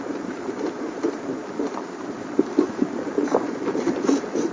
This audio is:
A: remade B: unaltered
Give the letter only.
A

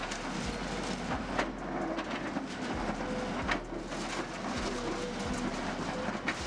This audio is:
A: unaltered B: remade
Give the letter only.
A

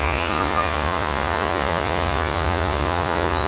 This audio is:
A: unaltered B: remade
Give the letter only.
B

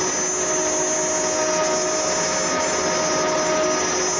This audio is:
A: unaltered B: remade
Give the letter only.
A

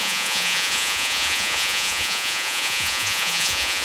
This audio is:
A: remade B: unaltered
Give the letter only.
A